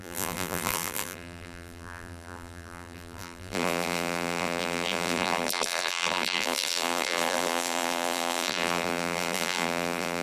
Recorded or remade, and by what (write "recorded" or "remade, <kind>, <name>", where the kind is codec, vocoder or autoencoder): remade, vocoder, BigVGAN v2